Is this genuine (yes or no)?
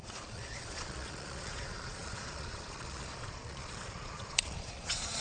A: no